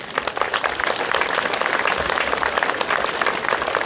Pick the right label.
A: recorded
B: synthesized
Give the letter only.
A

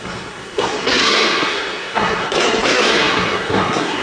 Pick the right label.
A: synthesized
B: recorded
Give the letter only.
A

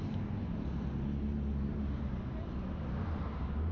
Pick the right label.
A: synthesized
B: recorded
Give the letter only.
B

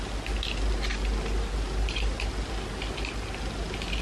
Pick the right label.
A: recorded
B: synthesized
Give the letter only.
A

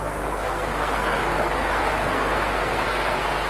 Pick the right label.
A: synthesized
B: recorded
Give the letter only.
A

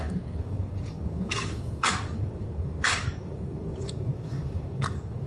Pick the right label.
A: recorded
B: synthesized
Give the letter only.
B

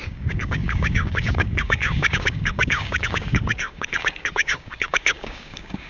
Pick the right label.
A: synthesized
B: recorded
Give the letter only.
A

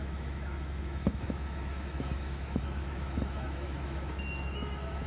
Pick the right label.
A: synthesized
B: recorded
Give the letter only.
A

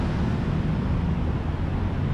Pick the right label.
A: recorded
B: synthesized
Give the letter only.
A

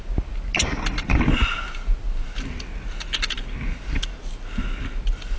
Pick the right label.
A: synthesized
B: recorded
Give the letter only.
B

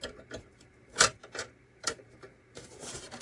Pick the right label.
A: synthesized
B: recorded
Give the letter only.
A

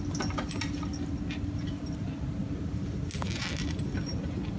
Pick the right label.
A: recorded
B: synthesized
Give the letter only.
A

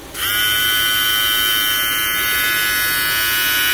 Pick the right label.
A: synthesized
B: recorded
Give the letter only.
B